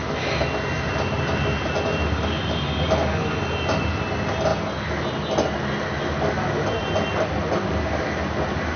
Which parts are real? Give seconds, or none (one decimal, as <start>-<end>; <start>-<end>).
0.0-8.8